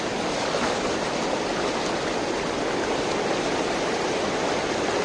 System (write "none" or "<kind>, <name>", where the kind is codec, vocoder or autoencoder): none